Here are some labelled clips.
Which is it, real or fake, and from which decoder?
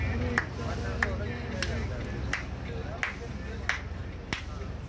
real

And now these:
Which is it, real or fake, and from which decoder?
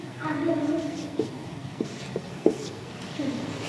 fake, codec, SNAC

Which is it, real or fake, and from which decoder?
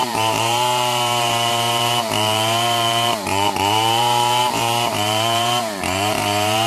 fake, vocoder, BigVGAN v2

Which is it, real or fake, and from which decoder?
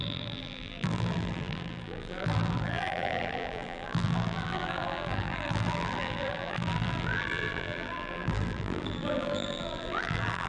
fake, vocoder, BigVGAN v2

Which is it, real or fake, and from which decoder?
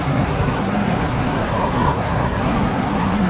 fake, codec, SNAC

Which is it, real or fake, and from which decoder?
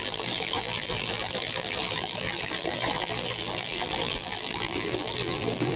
fake, vocoder, BigVGAN v2